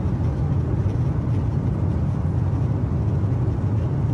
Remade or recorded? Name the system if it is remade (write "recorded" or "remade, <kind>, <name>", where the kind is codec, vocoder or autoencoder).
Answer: recorded